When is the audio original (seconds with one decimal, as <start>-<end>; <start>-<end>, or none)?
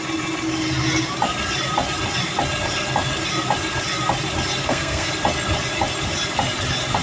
0.0-4.6; 5.1-7.0